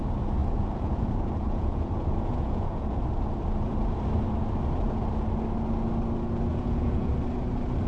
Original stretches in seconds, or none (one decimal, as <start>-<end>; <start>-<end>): 0.0-0.4; 3.0-6.5; 7.1-7.9